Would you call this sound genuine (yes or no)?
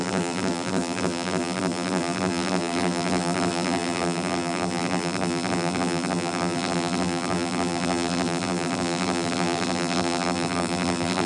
no